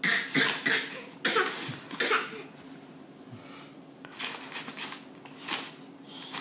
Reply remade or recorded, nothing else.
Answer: recorded